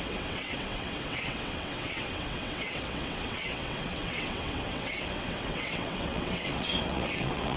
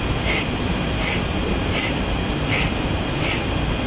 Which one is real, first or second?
second